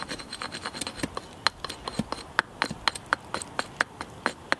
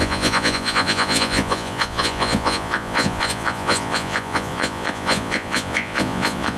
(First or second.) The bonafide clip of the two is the first